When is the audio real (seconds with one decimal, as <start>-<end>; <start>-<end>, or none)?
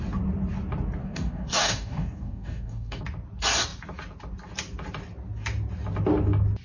0.0-1.0; 3.0-6.6